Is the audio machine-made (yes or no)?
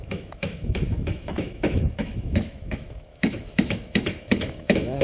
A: yes